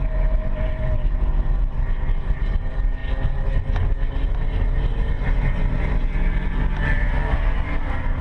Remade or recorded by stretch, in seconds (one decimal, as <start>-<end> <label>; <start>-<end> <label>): 0.0-8.2 recorded